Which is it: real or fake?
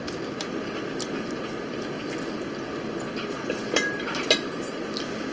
real